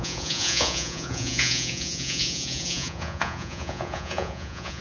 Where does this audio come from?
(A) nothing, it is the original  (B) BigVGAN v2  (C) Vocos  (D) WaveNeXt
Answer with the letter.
C